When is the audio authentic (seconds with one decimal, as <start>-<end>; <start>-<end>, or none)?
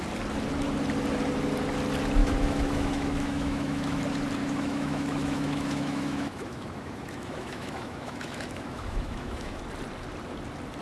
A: 0.0-2.2; 4.0-4.4; 9.6-10.8